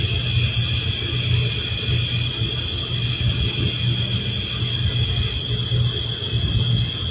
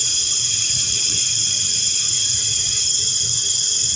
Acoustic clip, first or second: first